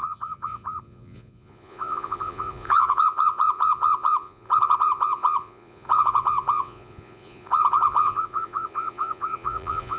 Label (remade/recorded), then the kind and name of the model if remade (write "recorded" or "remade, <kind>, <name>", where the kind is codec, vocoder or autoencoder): remade, vocoder, Vocos